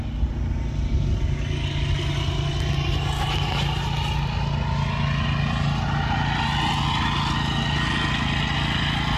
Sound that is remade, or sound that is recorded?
recorded